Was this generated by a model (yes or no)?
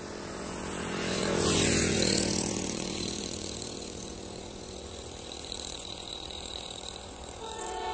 yes